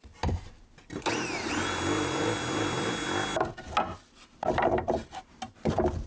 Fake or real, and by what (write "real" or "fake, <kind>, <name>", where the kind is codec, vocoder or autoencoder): real